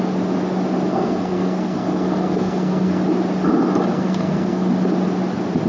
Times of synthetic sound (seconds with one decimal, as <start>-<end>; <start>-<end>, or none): 0.9-3.0; 3.9-4.7